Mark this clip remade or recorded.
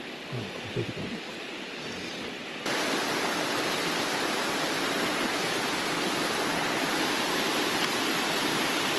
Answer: recorded